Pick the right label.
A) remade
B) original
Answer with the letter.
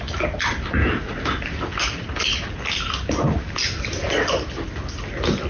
B